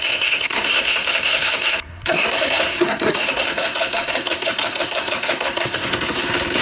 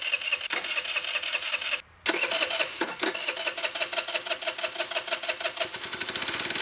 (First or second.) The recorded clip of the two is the second